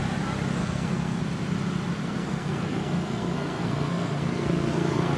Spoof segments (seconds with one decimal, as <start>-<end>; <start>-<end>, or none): 0.6-1.2; 2.0-5.2